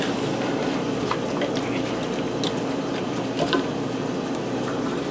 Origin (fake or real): real